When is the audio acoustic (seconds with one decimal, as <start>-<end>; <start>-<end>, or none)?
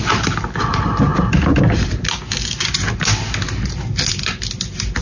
0.0-5.0